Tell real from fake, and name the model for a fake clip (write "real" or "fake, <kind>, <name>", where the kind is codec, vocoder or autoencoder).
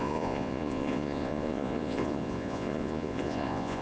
fake, vocoder, Vocos